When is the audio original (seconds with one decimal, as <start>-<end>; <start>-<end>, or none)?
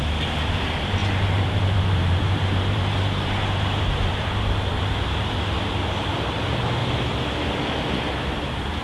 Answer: 0.0-1.0; 5.3-8.8